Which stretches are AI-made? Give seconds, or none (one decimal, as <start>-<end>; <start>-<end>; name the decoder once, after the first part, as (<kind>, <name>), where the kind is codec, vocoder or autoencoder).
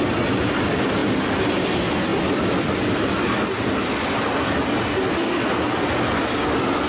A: none